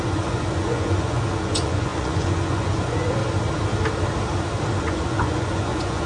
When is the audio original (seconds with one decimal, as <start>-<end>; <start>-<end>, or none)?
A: 3.2-4.8